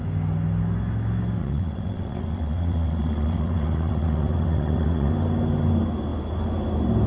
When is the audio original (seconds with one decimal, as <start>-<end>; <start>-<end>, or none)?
0.0-1.4; 5.1-7.1